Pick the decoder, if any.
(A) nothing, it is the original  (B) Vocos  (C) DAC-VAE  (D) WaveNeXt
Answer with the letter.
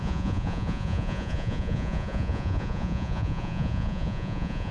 B